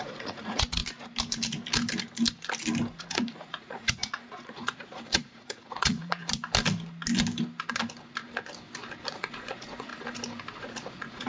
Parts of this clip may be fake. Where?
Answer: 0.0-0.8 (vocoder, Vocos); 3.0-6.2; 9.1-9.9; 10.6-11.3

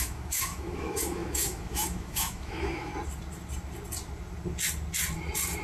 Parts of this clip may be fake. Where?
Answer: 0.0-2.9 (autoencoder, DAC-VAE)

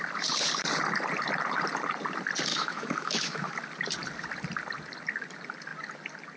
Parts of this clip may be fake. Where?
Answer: 2.5-3.5 (autoencoder, DAC-VAE)

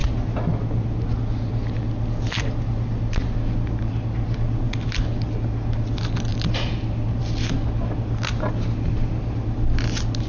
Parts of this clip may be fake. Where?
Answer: none

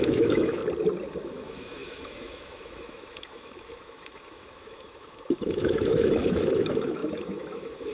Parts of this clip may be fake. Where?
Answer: 0.0-0.6 (autoencoder, DAC-VAE); 1.2-7.9

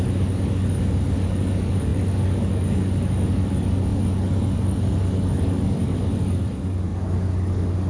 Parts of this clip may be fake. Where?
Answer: 0.0-7.9 (codec, DAC)